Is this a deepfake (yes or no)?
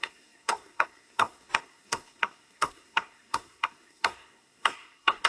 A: yes